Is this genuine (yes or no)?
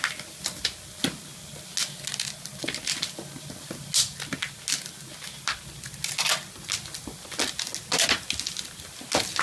yes